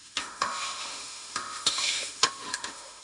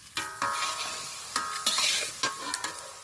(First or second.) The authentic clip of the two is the second